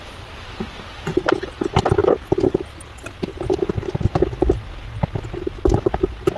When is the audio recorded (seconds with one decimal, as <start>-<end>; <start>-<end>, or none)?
0.0-6.4